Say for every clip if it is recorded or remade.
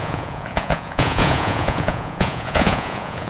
remade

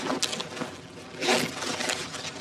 recorded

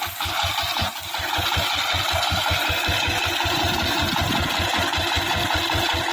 recorded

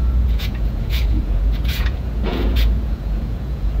remade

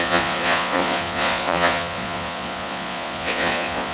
remade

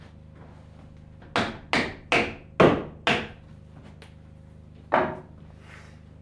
recorded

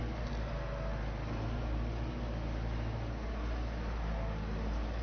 recorded